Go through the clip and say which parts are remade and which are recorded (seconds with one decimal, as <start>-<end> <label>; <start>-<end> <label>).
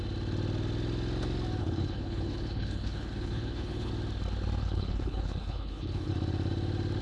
0.0-1.6 recorded; 1.6-3.9 remade; 3.9-4.6 recorded; 4.6-6.1 remade; 6.1-7.0 recorded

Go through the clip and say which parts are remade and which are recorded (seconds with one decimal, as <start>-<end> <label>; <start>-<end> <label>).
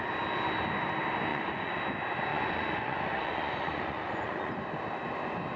0.0-1.3 recorded; 1.3-1.8 remade; 1.8-2.3 recorded; 2.3-4.5 remade; 4.5-5.6 recorded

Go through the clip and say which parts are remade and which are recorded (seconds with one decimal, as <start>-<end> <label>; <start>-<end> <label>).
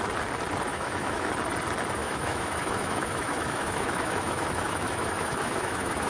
0.0-0.7 recorded; 0.7-1.3 remade; 1.3-2.0 recorded; 2.0-6.1 remade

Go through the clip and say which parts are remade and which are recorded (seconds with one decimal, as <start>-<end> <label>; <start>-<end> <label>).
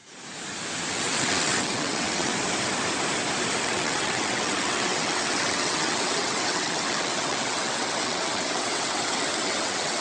0.0-0.9 recorded; 0.9-2.3 remade; 2.3-3.6 recorded; 3.6-10.0 remade